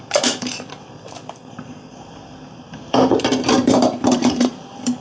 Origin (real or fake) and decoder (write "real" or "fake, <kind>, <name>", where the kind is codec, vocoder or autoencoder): fake, vocoder, BigVGAN v2